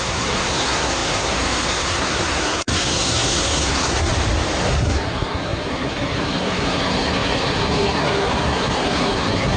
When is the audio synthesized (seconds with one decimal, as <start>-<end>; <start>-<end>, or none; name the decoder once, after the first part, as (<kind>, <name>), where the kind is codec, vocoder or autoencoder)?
0.0-4.1 (codec, SNAC); 4.6-9.6